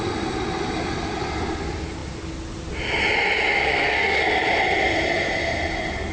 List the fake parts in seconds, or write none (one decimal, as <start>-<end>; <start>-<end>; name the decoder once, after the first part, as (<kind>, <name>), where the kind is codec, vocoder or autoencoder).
3.6-4.2 (codec, SNAC)